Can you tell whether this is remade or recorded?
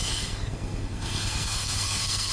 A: remade